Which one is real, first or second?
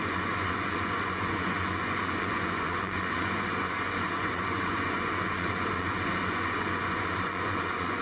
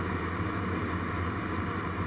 second